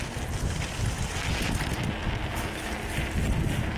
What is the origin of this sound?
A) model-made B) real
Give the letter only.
B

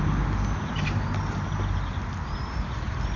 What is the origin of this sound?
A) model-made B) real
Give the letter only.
B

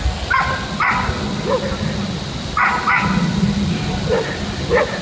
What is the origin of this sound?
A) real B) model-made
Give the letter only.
A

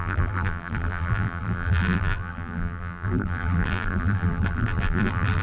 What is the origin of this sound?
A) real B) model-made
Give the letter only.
B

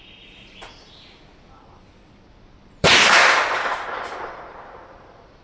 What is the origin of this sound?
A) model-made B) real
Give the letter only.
A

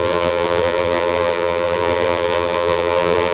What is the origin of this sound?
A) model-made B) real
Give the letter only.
A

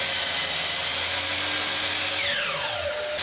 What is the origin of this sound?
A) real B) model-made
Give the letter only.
A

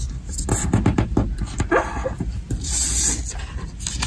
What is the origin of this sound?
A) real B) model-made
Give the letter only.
A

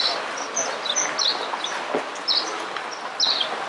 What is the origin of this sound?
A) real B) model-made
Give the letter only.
A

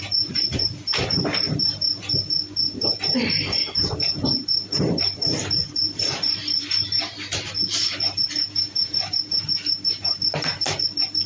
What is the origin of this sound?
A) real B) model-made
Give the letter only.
B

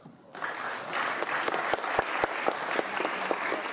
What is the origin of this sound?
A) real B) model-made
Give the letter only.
A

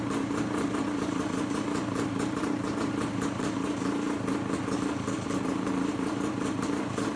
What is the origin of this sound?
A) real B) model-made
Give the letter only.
B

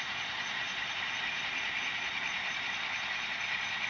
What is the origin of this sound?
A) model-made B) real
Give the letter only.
A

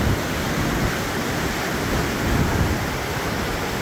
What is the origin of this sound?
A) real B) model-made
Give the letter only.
A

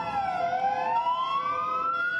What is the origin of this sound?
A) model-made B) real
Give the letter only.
B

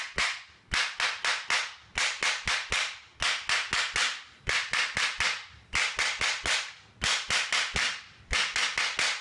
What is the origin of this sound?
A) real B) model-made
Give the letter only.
A